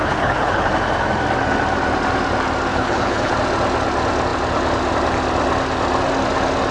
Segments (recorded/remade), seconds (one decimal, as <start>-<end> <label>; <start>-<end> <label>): 0.0-0.7 remade; 0.7-2.7 recorded; 2.7-3.3 remade; 3.3-6.7 recorded